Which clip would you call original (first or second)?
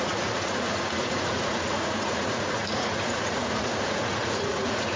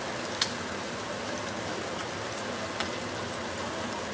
second